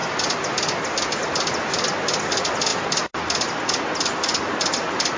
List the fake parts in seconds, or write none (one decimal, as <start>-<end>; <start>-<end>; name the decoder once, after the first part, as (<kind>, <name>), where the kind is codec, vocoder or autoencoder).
none